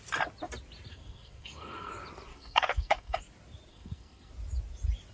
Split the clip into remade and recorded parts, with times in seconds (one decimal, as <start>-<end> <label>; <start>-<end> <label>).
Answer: 0.0-0.9 recorded; 0.9-1.9 remade; 1.9-2.3 recorded; 2.3-3.2 remade; 3.2-3.7 recorded; 3.7-4.3 remade; 4.3-5.1 recorded